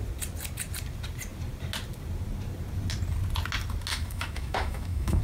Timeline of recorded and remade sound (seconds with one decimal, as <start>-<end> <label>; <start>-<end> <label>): 0.0-3.9 recorded; 3.9-5.2 remade